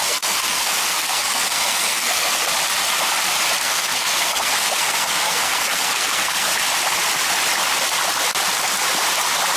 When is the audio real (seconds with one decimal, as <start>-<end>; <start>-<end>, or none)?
2.4-3.6; 6.5-9.6